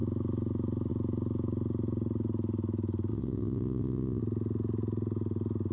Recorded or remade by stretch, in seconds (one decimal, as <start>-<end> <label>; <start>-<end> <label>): 0.0-3.1 recorded; 3.1-4.2 remade; 4.2-5.7 recorded